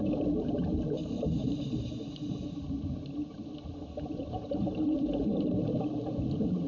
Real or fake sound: fake